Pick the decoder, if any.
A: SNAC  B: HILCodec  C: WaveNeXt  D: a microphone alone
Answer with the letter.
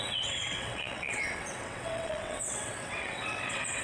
C